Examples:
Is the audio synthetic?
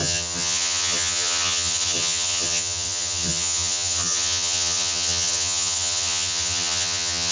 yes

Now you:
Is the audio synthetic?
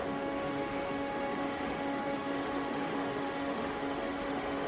yes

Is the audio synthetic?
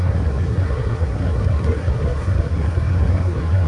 yes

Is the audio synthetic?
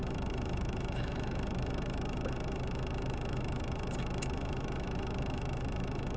yes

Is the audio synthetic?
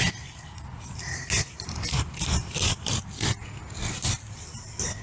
no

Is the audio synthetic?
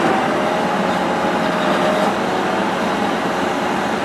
no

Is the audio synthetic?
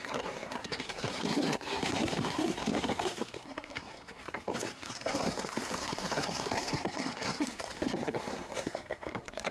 yes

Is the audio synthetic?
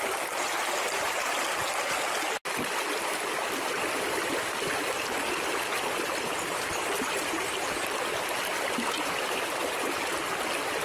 no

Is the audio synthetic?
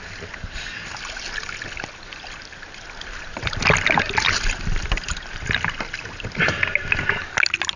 no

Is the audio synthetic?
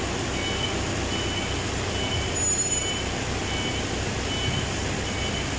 no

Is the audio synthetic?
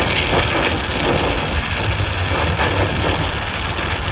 no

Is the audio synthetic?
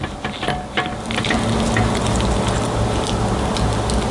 no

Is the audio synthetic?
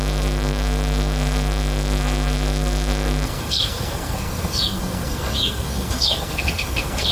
yes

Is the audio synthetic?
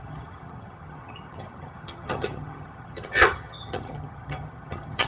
yes